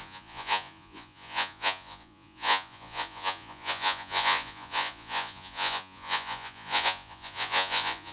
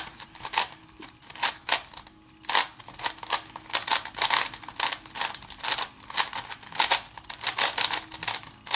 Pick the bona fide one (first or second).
second